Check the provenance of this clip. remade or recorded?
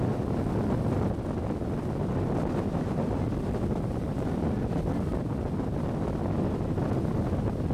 recorded